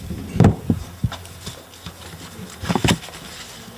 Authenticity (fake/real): real